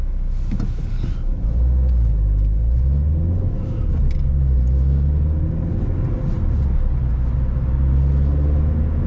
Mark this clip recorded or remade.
recorded